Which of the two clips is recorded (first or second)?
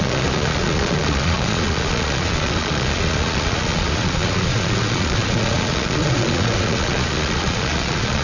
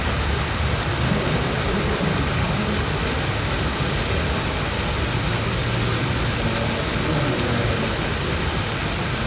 second